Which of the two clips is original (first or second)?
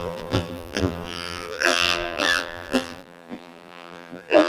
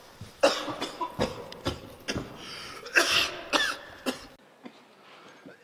second